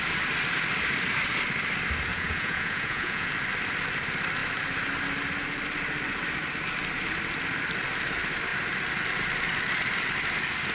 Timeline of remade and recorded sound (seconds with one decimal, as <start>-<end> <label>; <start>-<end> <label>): 0.0-2.1 recorded; 2.1-3.3 remade; 3.3-10.7 recorded